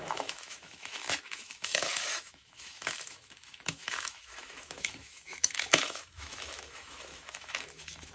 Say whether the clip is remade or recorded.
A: remade